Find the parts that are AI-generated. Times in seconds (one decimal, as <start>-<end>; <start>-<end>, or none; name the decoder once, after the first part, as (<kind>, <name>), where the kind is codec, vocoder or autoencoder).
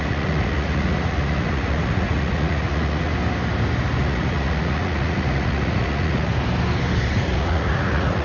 0.0-3.1 (vocoder, Vocos); 4.0-6.3; 7.1-8.2